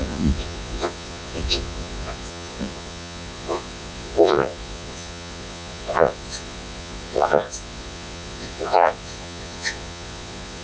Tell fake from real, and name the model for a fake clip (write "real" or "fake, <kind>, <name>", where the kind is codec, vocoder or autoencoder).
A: fake, vocoder, Vocos